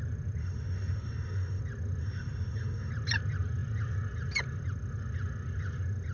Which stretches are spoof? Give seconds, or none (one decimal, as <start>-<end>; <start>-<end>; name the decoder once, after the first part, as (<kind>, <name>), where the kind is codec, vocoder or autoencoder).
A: 0.4-1.6 (autoencoder, DAC-VAE); 2.0-2.9